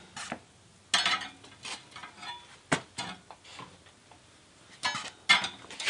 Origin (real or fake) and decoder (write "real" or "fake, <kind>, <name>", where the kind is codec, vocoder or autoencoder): real